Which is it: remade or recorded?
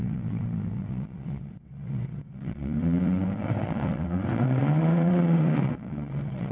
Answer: remade